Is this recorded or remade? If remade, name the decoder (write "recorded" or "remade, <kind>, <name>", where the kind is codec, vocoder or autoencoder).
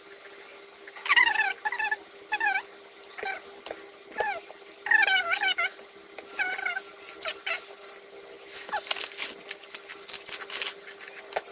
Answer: recorded